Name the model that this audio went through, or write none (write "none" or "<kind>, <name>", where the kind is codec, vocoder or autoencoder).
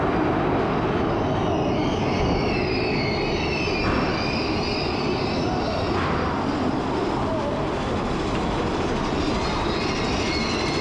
none